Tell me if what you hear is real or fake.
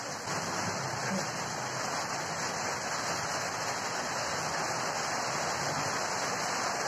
real